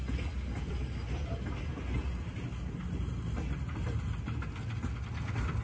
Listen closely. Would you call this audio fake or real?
real